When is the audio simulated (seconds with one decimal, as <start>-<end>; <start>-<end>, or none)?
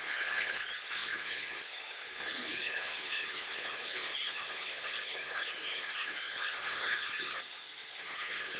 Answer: 0.0-8.6